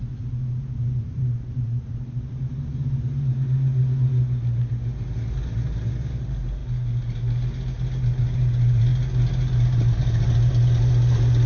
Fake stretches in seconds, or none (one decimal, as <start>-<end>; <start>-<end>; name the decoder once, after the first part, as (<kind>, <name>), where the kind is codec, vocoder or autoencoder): 0.0-3.7 (vocoder, BigVGAN v2); 4.7-6.6; 8.2-8.9